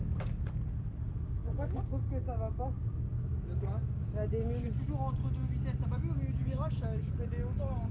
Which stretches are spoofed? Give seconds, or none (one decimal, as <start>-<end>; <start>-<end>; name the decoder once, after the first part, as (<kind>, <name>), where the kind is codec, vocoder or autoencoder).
6.4-7.0 (autoencoder, DAC-VAE)

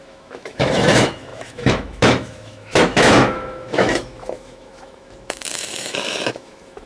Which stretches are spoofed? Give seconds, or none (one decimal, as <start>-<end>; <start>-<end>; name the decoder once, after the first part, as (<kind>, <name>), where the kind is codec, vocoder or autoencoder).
0.0-6.9 (autoencoder, DAC-VAE)

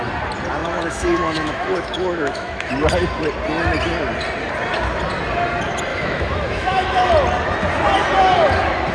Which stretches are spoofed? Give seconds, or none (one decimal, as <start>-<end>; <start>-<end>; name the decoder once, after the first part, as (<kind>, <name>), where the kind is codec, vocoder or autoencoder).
0.6-2.7 (autoencoder, DAC-VAE); 5.9-7.1

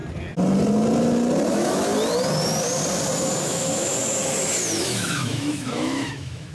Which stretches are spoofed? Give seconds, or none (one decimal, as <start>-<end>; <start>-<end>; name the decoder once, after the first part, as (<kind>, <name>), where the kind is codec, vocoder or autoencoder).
1.5-1.9 (autoencoder, DAC-VAE); 3.4-3.9; 4.8-6.5

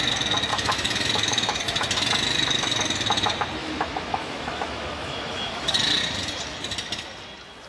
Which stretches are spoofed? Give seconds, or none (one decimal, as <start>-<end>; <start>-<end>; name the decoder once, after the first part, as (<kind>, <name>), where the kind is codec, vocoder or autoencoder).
0.5-1.6 (autoencoder, DAC-VAE); 3.6-5.7

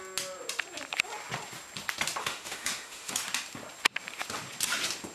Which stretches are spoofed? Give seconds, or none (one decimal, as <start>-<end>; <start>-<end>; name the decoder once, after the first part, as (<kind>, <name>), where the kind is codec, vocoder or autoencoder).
2.2-3.1 (autoencoder, DAC-VAE)